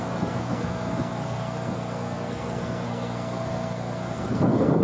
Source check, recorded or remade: remade